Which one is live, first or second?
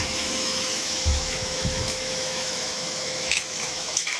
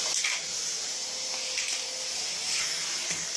second